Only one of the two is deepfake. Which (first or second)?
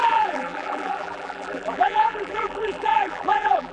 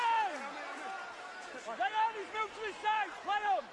first